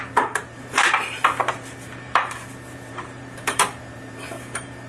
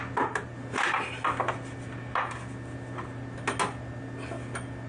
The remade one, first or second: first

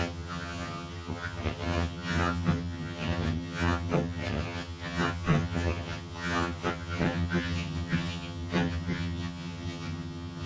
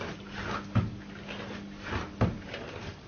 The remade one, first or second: first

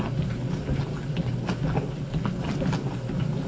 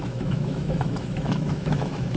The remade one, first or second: second